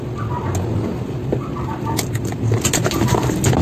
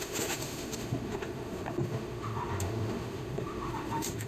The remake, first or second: second